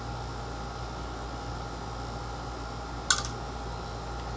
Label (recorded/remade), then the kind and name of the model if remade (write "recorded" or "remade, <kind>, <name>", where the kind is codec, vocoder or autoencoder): recorded